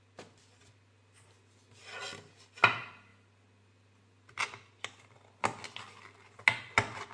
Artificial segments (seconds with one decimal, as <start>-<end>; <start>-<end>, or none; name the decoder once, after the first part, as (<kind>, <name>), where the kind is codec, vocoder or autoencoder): none